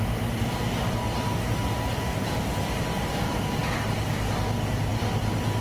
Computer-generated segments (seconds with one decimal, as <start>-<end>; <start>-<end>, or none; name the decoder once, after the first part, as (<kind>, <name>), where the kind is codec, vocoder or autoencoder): none

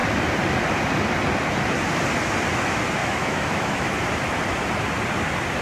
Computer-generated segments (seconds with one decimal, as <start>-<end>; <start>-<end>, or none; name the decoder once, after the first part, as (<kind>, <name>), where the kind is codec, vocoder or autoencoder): 3.0-4.0 (autoencoder, DAC-VAE)